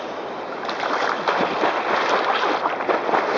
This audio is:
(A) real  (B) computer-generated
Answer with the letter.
A